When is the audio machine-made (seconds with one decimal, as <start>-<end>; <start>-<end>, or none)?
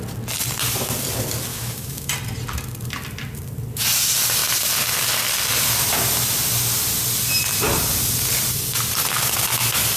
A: 1.5-2.1